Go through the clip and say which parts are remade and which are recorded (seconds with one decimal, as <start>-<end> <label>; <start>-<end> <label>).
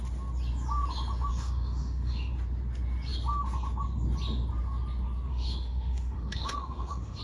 0.0-1.3 recorded; 1.3-2.3 remade; 2.3-5.3 recorded; 5.3-7.2 remade